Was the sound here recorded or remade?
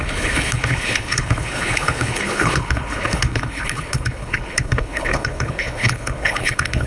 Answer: remade